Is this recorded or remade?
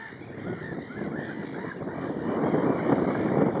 recorded